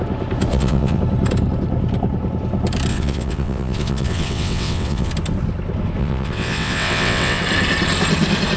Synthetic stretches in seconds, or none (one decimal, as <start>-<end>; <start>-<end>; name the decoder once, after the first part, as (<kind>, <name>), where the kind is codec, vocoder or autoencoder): 0.5-1.0 (vocoder, WaveNeXt); 2.9-5.1; 6.0-7.4